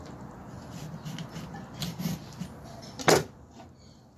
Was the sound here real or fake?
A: real